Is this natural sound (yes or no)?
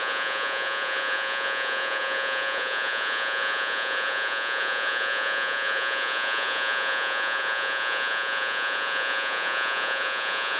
no